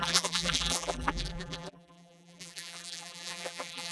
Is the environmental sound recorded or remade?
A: remade